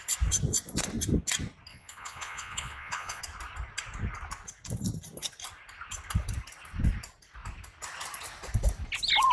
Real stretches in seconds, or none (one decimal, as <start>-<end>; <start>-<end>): 0.0-1.7; 3.2-9.3